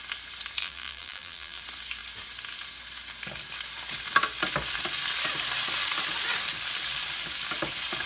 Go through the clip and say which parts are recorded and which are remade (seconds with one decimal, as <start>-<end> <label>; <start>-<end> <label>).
0.0-0.6 recorded; 0.6-1.6 remade; 1.6-8.1 recorded